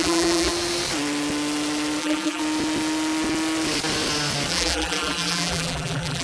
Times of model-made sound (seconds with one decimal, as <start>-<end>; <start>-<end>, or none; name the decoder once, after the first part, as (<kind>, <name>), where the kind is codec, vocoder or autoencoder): 0.0-0.5 (vocoder, BigVGAN v2); 2.0-2.4; 4.5-6.2